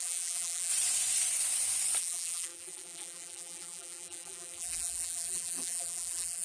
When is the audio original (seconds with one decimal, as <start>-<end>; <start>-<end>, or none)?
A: 0.7-2.0